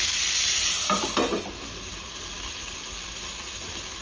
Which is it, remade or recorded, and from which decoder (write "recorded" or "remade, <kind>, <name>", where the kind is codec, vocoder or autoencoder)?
recorded